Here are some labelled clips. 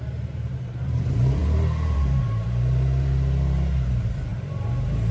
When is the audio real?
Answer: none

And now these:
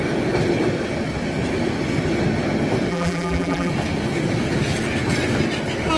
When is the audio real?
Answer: 0.0-2.9; 3.7-6.0